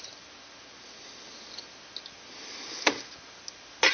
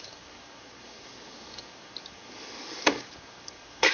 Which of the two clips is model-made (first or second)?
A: second